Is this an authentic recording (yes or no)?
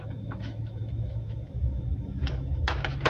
no